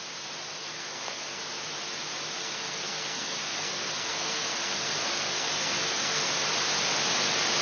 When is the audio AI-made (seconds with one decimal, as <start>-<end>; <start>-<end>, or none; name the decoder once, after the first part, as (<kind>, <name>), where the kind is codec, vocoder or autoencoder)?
0.6-1.4 (codec, SNAC); 2.4-6.3